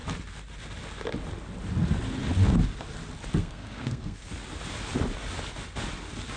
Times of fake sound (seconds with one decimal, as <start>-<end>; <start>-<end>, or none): 3.4-4.3